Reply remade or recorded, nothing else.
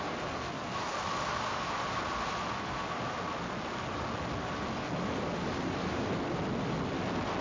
recorded